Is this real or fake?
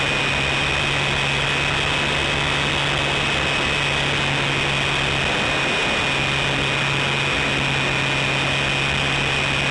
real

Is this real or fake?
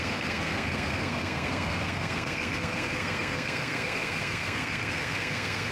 fake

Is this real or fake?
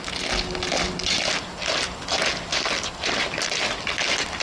real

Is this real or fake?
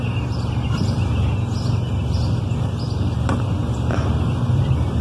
real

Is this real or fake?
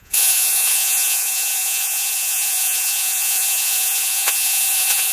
fake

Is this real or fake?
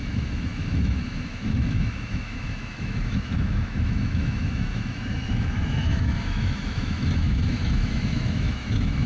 fake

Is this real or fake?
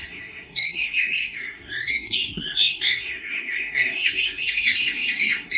fake